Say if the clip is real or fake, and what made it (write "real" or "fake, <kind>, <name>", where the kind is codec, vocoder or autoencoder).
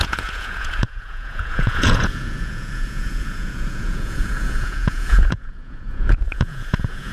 fake, vocoder, Vocos